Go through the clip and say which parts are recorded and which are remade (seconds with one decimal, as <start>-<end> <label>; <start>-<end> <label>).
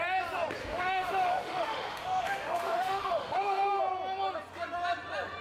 0.0-0.6 recorded; 0.6-3.8 remade; 3.8-5.4 recorded